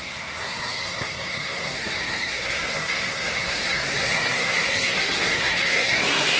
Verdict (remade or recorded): remade